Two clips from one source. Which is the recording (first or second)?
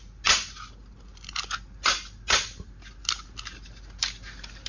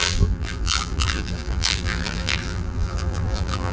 first